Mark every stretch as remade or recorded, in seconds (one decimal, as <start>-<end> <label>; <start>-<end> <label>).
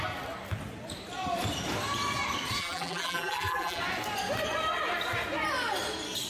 0.0-2.6 recorded; 2.6-3.8 remade; 3.8-6.3 recorded